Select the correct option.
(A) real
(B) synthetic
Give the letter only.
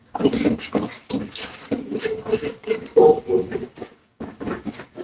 B